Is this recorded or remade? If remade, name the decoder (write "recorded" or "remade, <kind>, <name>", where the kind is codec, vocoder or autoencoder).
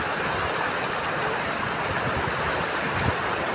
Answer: recorded